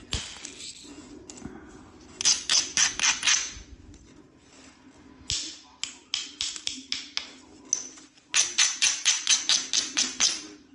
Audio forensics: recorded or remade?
recorded